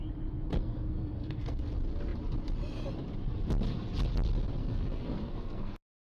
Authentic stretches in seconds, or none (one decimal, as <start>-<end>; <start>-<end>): 0.0-0.5; 1.6-4.6